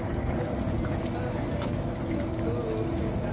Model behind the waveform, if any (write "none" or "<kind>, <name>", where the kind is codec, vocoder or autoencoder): none